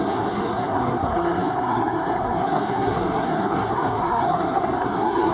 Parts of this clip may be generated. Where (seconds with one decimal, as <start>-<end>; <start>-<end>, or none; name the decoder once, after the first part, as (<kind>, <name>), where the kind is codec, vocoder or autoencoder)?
0.0-5.3 (codec, SNAC)